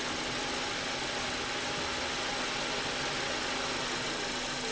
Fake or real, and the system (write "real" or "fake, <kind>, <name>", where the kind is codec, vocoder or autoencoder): real